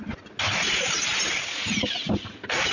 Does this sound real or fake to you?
real